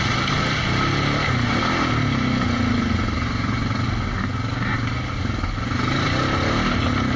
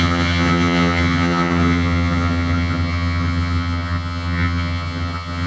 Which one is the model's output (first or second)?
second